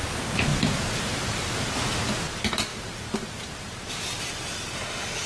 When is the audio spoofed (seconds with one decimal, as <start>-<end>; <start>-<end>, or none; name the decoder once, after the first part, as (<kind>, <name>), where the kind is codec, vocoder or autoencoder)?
0.5-1.6 (vocoder, BigVGAN v2); 2.7-3.9